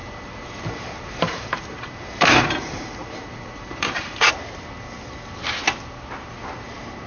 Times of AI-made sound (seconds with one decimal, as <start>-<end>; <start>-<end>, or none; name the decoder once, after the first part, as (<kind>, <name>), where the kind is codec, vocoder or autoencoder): 0.0-4.3 (vocoder, BigVGAN v2)